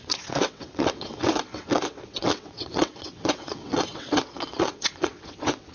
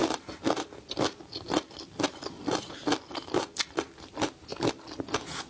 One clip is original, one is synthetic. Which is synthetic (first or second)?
first